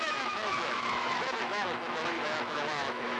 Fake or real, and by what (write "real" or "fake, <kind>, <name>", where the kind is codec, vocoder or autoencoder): fake, autoencoder, DAC-VAE